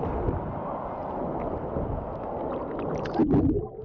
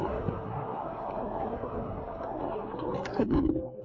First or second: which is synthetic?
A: second